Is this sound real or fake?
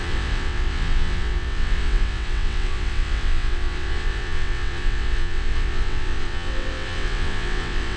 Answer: fake